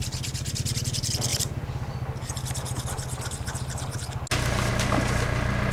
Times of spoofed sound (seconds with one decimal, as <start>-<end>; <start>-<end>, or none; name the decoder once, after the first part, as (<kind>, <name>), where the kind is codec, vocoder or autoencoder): none